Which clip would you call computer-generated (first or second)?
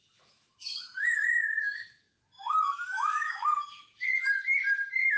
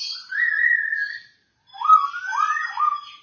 first